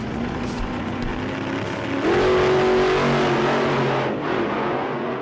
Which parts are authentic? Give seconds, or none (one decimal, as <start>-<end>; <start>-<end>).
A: 1.1-4.2